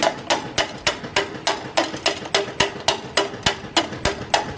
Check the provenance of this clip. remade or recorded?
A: recorded